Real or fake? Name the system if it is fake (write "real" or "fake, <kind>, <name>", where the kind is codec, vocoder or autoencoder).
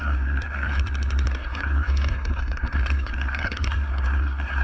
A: fake, codec, SNAC